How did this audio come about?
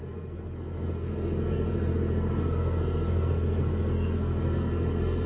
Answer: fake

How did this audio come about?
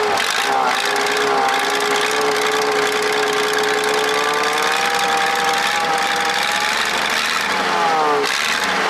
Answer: real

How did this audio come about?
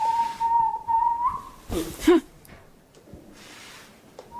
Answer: fake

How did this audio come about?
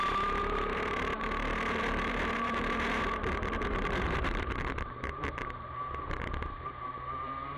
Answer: fake